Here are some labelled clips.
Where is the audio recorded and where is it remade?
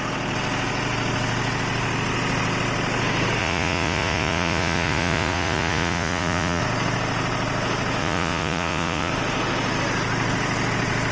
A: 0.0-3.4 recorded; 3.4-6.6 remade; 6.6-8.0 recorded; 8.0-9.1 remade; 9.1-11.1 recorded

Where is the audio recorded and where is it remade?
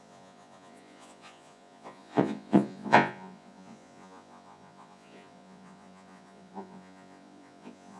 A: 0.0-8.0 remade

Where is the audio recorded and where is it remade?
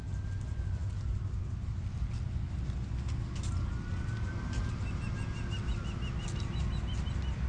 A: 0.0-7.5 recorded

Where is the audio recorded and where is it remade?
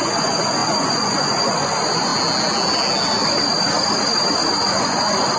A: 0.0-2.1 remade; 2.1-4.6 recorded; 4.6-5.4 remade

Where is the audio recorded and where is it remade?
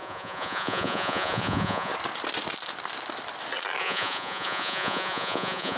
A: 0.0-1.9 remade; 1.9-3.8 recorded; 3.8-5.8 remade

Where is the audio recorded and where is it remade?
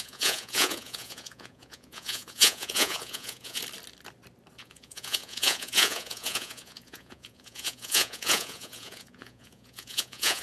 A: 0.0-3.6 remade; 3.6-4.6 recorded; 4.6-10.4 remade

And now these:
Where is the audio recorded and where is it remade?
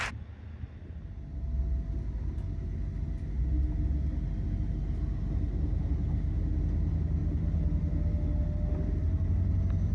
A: 0.0-9.9 recorded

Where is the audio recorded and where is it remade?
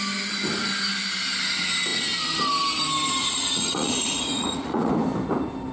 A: 0.0-3.2 recorded; 3.2-4.9 remade; 4.9-5.7 recorded